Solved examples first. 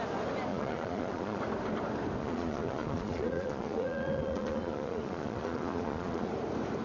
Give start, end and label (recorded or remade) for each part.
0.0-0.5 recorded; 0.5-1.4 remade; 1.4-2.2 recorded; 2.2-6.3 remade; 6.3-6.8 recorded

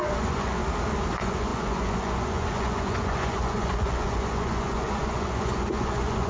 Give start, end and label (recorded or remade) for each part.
0.0-0.6 remade; 0.6-1.1 recorded; 1.1-6.3 remade